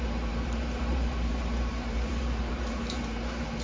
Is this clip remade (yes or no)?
yes